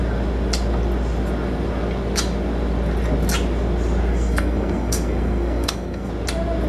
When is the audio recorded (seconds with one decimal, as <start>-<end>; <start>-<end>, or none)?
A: 0.0-4.1; 6.1-6.7